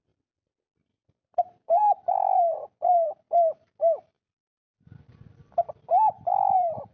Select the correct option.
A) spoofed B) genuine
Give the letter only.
A